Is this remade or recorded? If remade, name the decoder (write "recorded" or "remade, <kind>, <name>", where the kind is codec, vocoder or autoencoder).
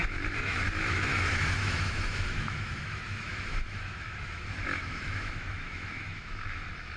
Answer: remade, autoencoder, DAC-VAE